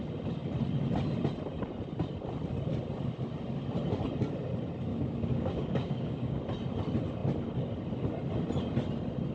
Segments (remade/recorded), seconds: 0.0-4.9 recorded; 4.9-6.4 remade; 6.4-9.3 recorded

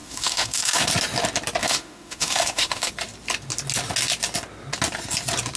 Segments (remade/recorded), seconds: 0.0-0.9 remade; 0.9-1.6 recorded; 1.6-2.9 remade; 2.9-5.6 recorded

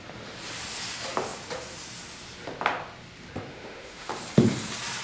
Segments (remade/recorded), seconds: 0.0-3.5 recorded; 3.5-4.1 remade; 4.1-5.0 recorded

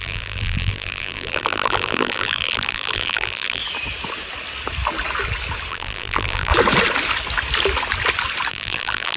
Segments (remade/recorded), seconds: 0.0-3.6 remade; 3.6-5.7 recorded; 5.7-6.5 remade; 6.5-8.5 recorded; 8.5-9.2 remade